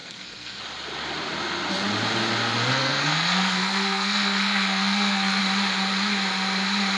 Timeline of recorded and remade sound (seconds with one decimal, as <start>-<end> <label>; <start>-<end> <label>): 0.0-0.6 remade; 0.6-2.7 recorded; 2.7-5.4 remade; 5.4-7.0 recorded